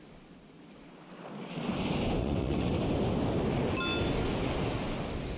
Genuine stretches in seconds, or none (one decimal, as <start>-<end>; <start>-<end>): 0.0-2.2; 2.7-5.4